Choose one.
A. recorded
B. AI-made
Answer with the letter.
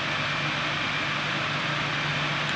A